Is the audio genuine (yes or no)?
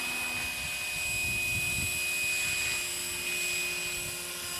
yes